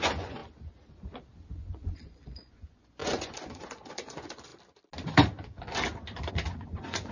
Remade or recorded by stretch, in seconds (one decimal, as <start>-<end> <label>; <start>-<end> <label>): 0.0-0.4 remade; 0.4-1.5 recorded; 1.5-4.5 remade; 4.5-6.3 recorded; 6.3-7.1 remade